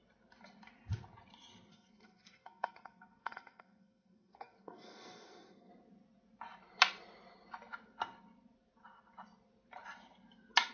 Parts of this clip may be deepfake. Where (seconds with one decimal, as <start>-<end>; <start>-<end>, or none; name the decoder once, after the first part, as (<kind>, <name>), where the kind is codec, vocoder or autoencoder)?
1.7-5.7 (codec, SNAC)